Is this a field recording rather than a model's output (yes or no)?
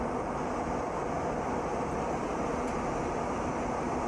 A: yes